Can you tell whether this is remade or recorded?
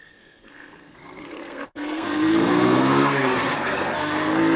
remade